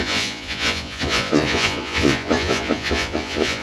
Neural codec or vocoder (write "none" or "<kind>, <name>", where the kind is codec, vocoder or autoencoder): vocoder, Vocos